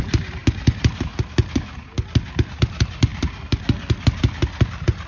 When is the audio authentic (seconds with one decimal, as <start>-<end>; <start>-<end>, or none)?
0.0-5.1